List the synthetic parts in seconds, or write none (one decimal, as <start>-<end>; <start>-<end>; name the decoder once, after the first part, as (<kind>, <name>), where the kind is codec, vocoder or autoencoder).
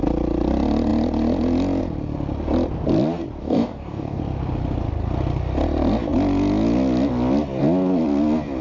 3.4-4.2 (codec, DAC)